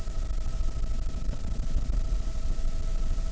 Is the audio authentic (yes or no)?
no